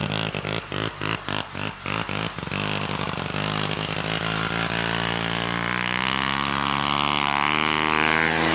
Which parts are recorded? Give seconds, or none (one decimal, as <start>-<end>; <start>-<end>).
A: 0.0-8.5